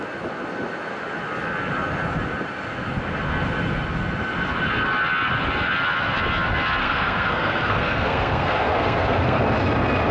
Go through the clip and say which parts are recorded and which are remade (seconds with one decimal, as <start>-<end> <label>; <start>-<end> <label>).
0.0-6.8 recorded; 6.8-9.4 remade; 9.4-10.1 recorded